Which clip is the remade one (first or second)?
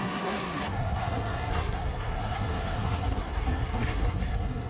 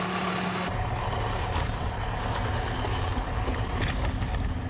first